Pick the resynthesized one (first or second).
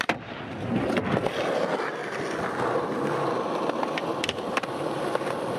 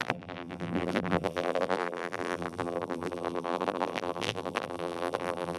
second